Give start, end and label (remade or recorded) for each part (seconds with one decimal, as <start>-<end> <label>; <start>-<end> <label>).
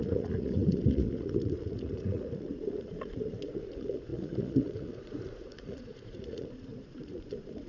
0.0-7.7 remade